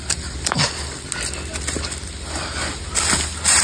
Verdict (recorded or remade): recorded